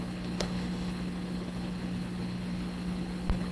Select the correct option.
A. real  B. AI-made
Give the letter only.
B